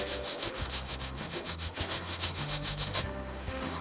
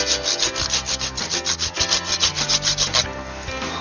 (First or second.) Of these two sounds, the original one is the second